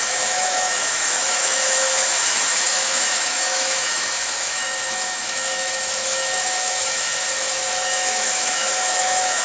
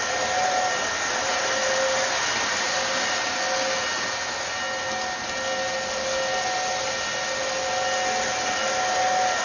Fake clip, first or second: first